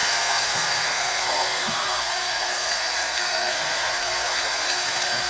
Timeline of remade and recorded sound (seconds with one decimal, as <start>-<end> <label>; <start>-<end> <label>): 0.0-5.3 remade